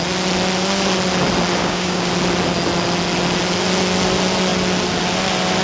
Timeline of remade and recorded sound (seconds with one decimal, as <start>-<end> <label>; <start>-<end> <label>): 0.0-1.6 recorded; 1.6-2.1 remade; 2.1-5.6 recorded